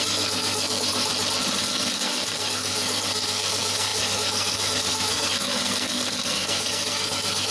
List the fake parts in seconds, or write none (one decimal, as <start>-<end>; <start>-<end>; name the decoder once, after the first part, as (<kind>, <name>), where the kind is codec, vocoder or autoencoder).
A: 0.0-1.1 (codec, SNAC); 1.6-7.5